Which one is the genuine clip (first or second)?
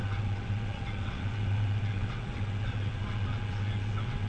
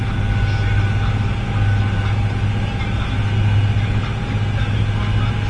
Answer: second